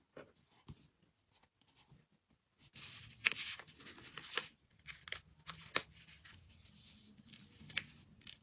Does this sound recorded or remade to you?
recorded